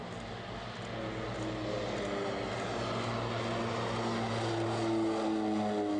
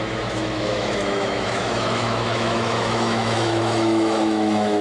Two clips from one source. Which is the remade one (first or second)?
second